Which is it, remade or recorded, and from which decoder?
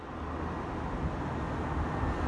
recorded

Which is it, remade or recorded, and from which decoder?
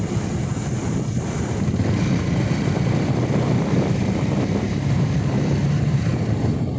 remade, vocoder, BigVGAN v2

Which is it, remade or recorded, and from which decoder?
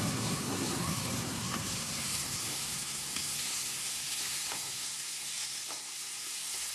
remade, codec, SNAC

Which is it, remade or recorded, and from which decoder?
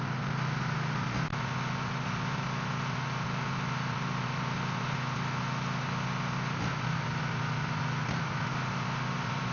recorded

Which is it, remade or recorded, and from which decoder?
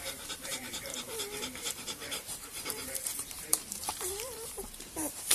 remade, vocoder, BigVGAN v2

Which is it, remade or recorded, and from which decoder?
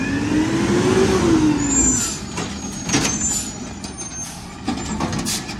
recorded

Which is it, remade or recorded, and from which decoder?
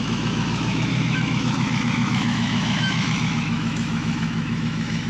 remade, autoencoder, DAC-VAE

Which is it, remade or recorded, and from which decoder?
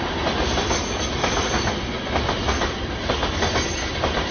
recorded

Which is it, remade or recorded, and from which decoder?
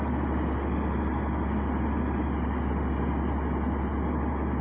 recorded